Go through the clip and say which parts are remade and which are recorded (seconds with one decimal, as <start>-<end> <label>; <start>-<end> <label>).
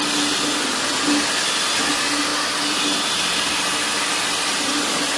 0.0-5.2 recorded